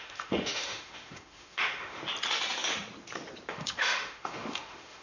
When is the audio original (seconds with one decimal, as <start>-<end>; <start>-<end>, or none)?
2.0-3.5